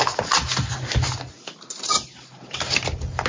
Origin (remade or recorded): recorded